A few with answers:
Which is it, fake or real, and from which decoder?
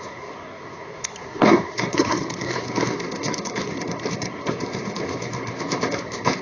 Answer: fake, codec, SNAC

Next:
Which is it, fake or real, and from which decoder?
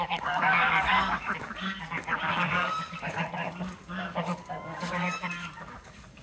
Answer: fake, codec, DAC